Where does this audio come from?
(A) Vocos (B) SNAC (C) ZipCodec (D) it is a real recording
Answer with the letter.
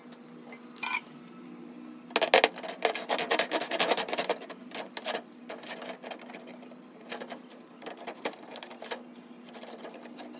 D